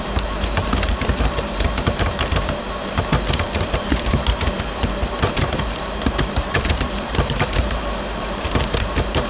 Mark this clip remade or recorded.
remade